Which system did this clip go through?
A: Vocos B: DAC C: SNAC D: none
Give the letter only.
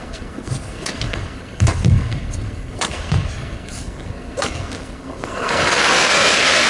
C